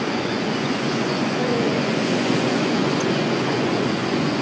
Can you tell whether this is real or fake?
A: fake